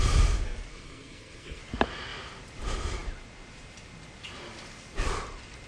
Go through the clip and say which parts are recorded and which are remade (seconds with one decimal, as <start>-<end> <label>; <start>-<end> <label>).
0.0-0.7 recorded; 0.7-1.6 remade; 1.6-5.7 recorded